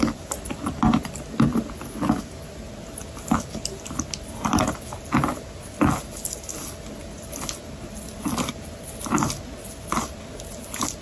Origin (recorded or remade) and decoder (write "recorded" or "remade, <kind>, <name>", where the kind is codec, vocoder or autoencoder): recorded